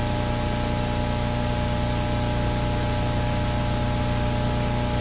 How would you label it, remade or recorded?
recorded